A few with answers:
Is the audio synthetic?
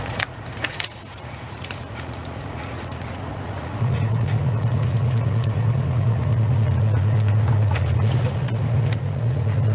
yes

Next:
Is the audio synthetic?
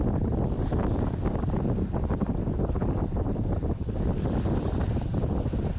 no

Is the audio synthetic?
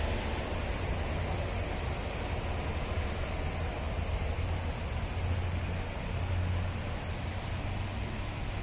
no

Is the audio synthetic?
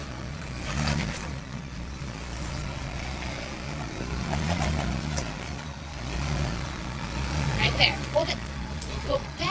yes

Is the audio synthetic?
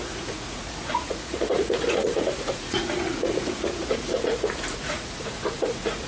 yes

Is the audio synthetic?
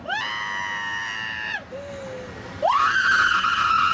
no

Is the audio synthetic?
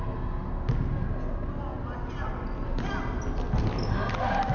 no